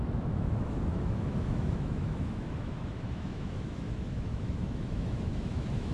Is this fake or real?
fake